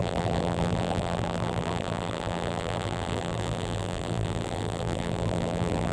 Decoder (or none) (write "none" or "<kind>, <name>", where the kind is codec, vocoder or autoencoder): vocoder, BigVGAN v2